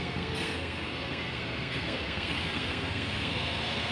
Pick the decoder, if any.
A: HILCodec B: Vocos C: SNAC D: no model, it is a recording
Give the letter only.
C